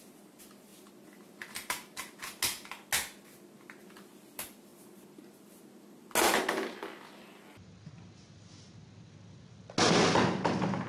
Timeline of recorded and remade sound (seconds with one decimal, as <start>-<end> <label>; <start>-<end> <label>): 0.0-10.9 recorded